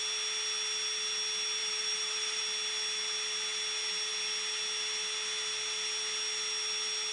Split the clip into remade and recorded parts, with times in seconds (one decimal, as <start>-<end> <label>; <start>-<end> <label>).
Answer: 0.0-1.6 recorded; 1.6-2.4 remade; 2.4-7.1 recorded